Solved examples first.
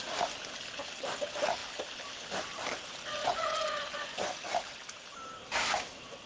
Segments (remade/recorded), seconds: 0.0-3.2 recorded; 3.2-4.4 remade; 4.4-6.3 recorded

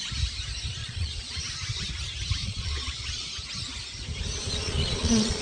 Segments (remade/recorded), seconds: 0.0-0.8 recorded; 0.8-1.4 remade; 1.4-2.4 recorded; 2.4-3.3 remade; 3.3-4.4 recorded; 4.4-5.4 remade

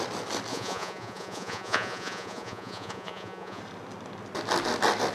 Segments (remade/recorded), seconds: 0.0-0.5 recorded; 0.5-3.6 remade; 3.6-5.1 recorded

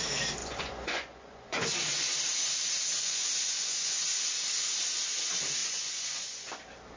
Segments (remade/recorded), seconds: 0.0-0.4 recorded; 0.4-1.7 remade; 1.7-2.9 recorded; 2.9-4.3 remade; 4.3-5.6 recorded; 5.6-6.6 remade; 6.6-7.0 recorded

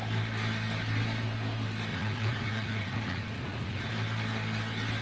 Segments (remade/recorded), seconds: 0.0-1.9 recorded; 1.9-3.9 remade; 3.9-5.0 recorded

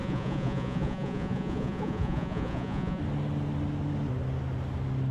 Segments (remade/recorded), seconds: 0.0-3.0 remade; 3.0-5.1 recorded

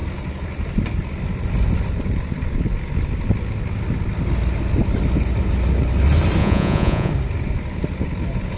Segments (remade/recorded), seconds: 0.0-6.4 recorded; 6.4-7.1 remade; 7.1-8.6 recorded